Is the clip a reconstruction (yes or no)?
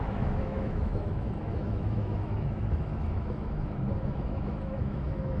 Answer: yes